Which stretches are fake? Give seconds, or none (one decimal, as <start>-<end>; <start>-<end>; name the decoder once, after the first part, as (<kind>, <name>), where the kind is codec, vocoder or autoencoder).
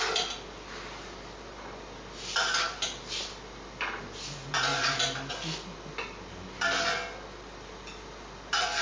none